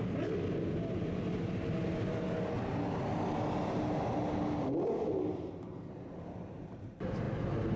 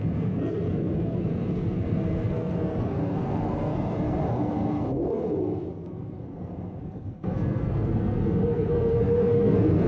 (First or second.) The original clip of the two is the first